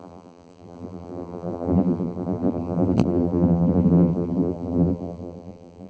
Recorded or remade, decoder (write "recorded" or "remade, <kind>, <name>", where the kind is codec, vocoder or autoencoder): remade, vocoder, BigVGAN v2